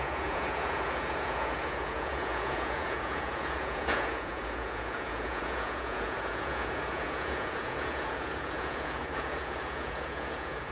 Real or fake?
fake